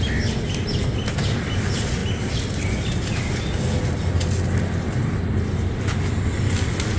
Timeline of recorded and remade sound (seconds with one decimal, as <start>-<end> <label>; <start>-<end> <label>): 0.0-7.0 recorded